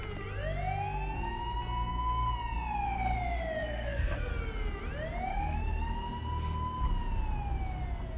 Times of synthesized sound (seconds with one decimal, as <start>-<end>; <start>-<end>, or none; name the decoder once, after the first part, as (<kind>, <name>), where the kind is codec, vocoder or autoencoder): 3.6-4.3 (codec, SNAC); 5.3-5.9